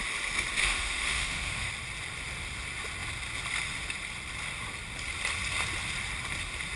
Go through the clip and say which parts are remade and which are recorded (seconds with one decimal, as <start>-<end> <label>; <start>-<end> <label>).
0.0-0.6 recorded; 0.6-1.7 remade; 1.7-6.8 recorded